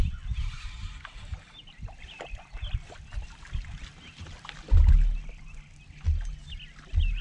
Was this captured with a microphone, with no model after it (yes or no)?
yes